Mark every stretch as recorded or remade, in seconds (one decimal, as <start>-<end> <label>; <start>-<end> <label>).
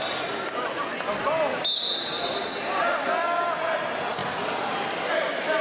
0.0-5.6 recorded